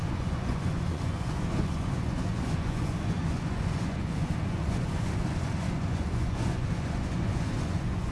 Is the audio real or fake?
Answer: fake